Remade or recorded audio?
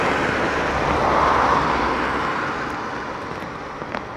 recorded